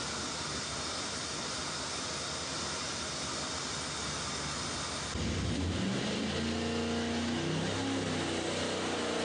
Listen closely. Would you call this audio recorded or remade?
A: recorded